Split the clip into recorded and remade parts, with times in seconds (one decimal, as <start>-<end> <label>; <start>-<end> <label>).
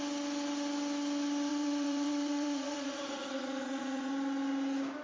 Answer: 0.0-1.5 recorded; 1.5-4.1 remade; 4.1-5.0 recorded